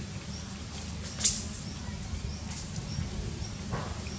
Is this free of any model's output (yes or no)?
yes